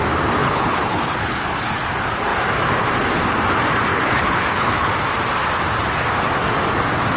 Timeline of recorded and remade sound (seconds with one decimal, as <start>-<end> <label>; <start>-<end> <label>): 0.0-0.4 recorded; 0.4-1.8 remade; 1.8-3.9 recorded; 3.9-4.9 remade; 4.9-7.2 recorded